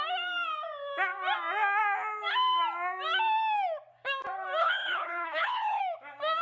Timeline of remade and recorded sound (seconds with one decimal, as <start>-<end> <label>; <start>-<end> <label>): 0.0-4.6 recorded; 4.6-5.8 remade; 5.8-6.4 recorded